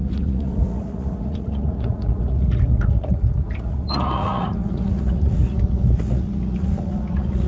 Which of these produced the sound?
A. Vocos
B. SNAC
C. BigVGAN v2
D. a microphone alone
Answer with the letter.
A